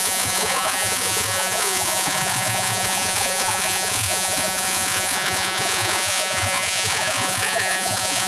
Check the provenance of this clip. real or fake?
fake